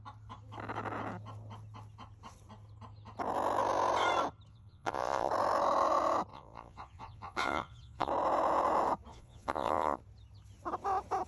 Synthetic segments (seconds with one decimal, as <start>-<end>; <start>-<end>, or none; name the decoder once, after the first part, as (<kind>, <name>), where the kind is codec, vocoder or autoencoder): 4.5-5.3 (vocoder, Vocos); 6.3-8.1; 9.1-10.0